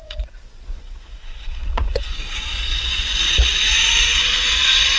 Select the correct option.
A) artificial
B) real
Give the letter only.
A